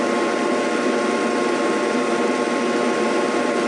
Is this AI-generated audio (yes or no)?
no